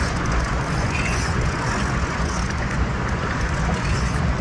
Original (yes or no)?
no